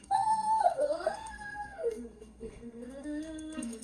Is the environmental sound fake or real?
fake